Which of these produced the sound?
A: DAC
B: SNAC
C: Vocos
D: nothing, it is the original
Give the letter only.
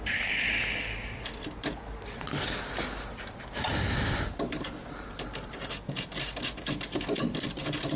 D